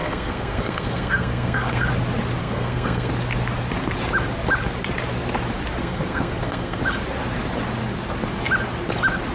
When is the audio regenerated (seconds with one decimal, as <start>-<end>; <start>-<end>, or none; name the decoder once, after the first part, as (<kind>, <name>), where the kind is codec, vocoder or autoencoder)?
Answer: 0.0-1.9 (codec, SNAC); 2.4-3.1; 5.8-6.8